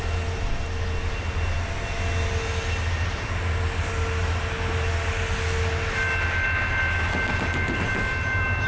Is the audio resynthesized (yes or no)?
no